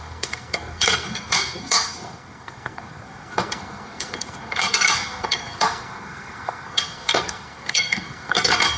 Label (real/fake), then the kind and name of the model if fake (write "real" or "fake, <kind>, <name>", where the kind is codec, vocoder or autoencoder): fake, codec, SNAC